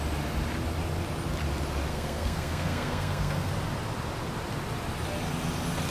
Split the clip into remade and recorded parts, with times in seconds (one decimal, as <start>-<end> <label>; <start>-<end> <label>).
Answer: 0.0-1.9 recorded; 1.9-3.5 remade; 3.5-5.9 recorded